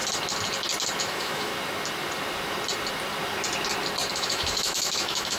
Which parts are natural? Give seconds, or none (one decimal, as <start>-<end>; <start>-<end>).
0.0-1.0; 1.5-4.1